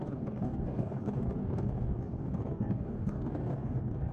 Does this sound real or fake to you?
fake